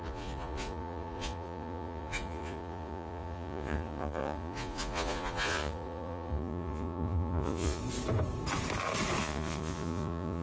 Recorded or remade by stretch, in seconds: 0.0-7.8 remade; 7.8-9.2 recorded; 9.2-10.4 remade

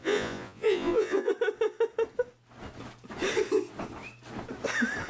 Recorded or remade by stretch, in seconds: 0.0-1.3 remade; 1.3-5.1 recorded